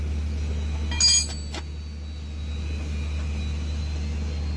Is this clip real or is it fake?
real